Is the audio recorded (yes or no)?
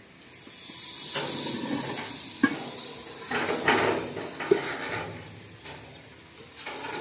yes